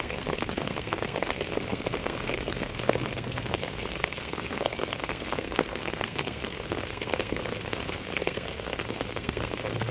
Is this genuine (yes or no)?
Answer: no